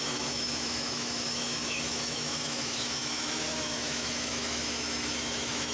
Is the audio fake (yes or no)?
yes